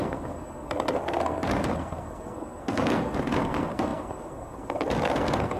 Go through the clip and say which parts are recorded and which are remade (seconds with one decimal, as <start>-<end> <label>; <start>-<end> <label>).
0.0-5.6 remade